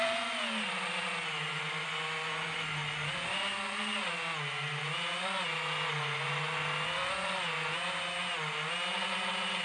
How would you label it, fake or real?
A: real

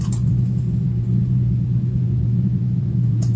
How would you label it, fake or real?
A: fake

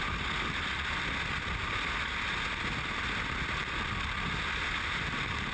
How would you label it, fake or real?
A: real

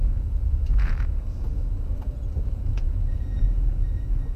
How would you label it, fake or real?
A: fake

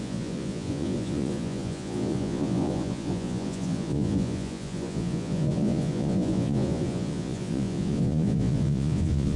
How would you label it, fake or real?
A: fake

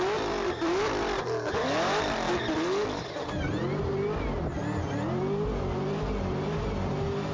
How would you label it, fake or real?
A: real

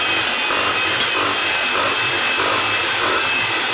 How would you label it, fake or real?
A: real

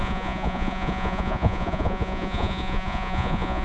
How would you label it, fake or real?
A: fake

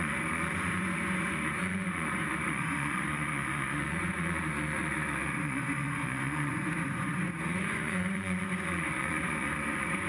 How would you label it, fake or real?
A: fake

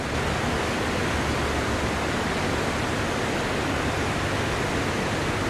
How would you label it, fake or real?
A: real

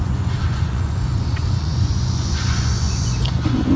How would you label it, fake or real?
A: fake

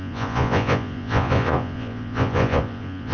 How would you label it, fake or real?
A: fake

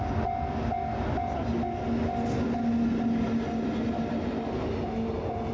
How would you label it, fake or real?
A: real